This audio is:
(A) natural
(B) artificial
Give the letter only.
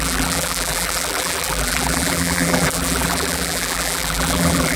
B